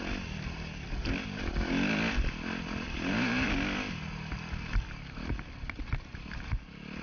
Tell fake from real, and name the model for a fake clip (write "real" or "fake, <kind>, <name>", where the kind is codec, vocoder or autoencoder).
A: real